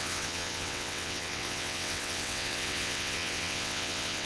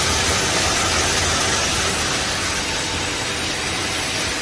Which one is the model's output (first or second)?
first